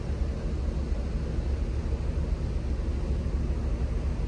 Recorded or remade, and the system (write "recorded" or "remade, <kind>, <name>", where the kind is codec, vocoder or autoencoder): recorded